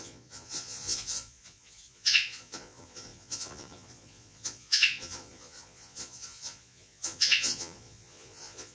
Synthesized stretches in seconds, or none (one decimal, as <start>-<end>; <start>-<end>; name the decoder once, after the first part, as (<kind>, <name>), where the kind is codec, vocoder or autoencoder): 0.0-8.7 (vocoder, Vocos)